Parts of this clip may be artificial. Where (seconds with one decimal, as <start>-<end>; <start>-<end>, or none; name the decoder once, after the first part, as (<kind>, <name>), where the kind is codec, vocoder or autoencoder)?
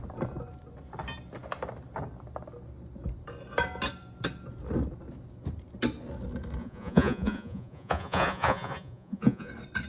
6.6-9.5 (vocoder, Vocos)